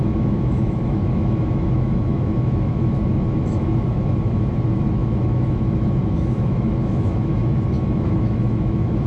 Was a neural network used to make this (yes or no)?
yes